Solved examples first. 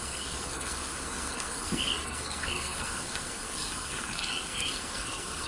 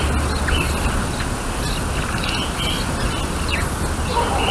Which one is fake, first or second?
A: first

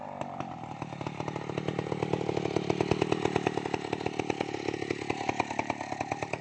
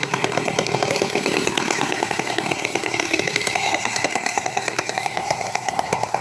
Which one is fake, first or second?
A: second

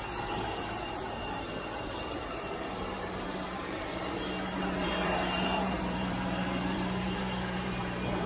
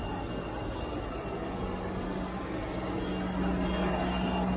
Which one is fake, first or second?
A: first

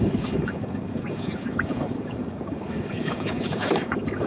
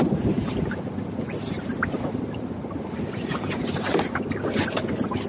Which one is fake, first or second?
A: first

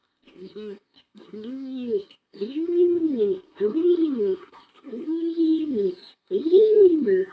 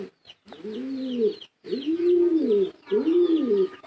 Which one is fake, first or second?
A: first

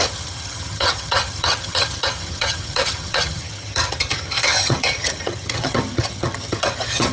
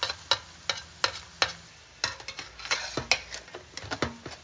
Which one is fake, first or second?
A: first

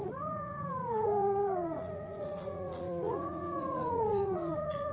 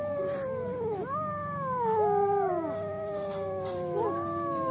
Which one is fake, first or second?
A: first